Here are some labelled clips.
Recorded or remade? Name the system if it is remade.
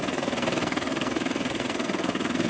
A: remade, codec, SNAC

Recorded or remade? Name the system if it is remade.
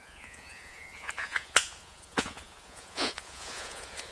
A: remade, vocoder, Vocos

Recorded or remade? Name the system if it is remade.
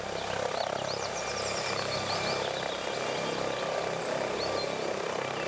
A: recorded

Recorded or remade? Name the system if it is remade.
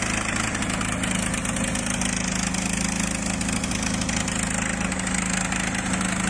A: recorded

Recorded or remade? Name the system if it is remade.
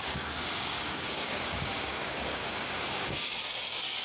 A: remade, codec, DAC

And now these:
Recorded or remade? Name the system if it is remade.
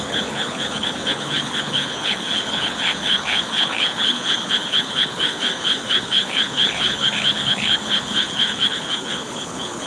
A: remade, codec, HILCodec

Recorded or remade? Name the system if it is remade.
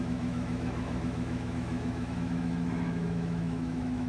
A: remade, autoencoder, DAC-VAE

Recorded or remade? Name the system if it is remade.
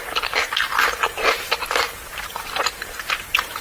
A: remade, vocoder, BigVGAN v2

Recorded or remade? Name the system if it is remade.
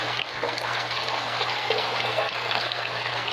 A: remade, codec, SNAC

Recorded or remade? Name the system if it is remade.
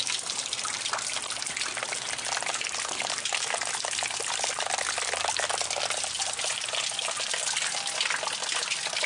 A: recorded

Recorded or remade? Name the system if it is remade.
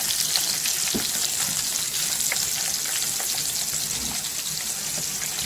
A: recorded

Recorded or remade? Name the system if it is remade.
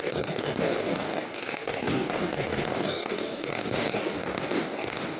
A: remade, codec, DAC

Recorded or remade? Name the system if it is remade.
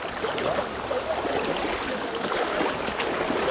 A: recorded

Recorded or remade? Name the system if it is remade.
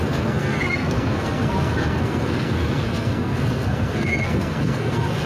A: remade, codec, SNAC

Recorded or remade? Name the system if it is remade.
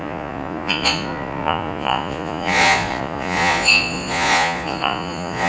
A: remade, vocoder, Vocos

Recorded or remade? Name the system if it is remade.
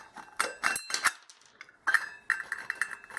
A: recorded